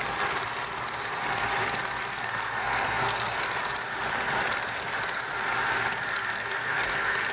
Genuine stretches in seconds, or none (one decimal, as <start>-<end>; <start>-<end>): 0.0-2.1; 3.6-6.1